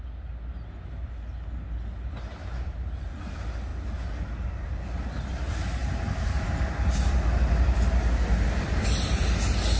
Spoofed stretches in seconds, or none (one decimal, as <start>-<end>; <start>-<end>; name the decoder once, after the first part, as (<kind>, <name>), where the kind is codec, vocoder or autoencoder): 2.4-3.1 (vocoder, BigVGAN v2); 5.8-6.7